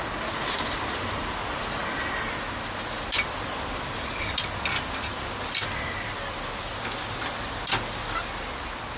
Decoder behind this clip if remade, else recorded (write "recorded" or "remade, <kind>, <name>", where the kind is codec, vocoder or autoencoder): recorded